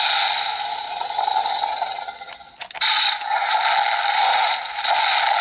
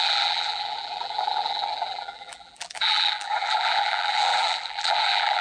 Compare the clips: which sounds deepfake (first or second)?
second